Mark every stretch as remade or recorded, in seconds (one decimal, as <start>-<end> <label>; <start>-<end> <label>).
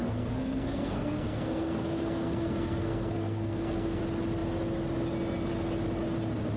0.0-4.0 remade; 4.0-6.6 recorded